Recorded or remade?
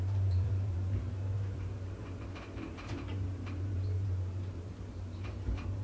remade